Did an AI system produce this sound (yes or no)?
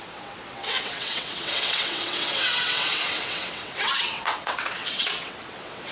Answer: yes